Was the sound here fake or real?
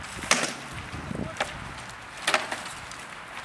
real